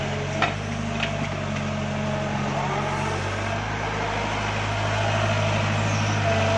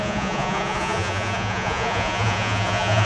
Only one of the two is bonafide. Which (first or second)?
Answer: first